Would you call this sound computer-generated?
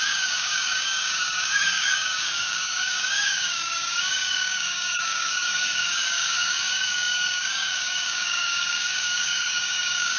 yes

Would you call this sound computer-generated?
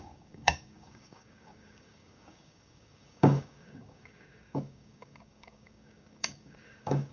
yes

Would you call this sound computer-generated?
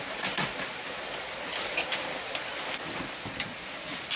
no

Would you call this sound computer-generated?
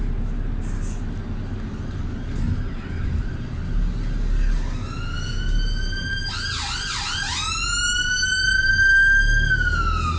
no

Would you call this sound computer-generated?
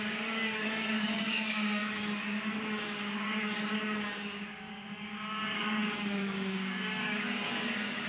yes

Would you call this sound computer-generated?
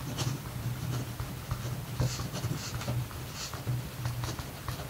no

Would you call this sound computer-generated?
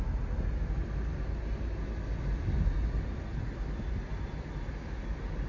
no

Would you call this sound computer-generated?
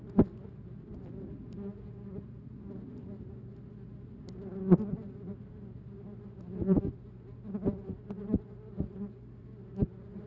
no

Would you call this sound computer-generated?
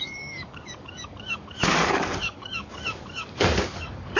yes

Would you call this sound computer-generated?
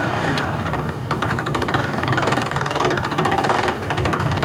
yes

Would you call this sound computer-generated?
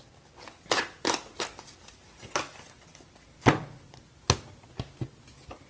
no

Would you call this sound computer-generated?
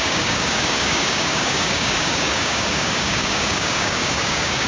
yes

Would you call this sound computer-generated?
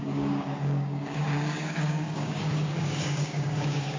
yes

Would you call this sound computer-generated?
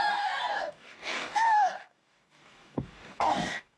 yes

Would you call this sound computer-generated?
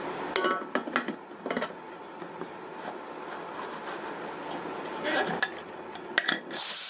no